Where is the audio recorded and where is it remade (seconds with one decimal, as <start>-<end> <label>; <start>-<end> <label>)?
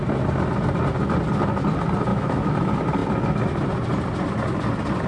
0.0-2.1 recorded; 2.1-2.6 remade; 2.6-5.1 recorded